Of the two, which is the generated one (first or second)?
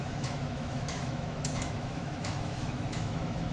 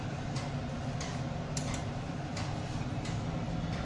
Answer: first